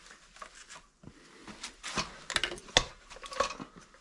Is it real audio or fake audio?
real